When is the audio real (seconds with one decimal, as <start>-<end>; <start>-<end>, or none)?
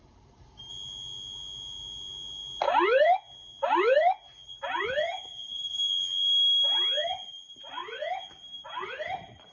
0.0-9.5